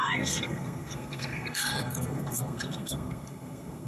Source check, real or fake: fake